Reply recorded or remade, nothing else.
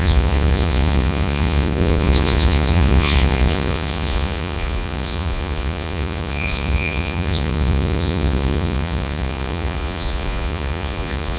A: remade